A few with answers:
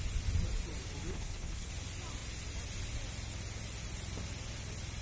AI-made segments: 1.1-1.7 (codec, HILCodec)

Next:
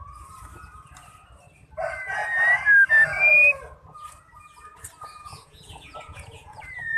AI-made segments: 5.2-7.0 (vocoder, Vocos)

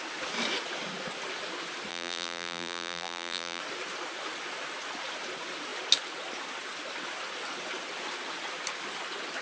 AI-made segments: 1.9-3.6 (vocoder, BigVGAN v2)